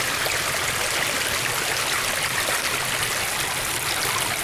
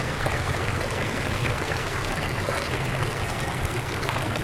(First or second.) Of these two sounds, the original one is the first